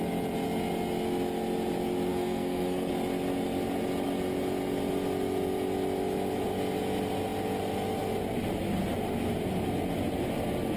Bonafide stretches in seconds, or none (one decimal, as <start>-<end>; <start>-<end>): 0.0-2.1; 2.9-10.8